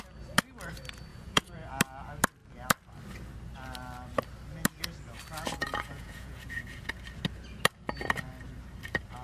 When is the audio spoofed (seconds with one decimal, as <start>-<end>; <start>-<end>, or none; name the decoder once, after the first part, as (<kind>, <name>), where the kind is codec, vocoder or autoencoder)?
1.1-1.7 (vocoder, Vocos); 5.6-6.9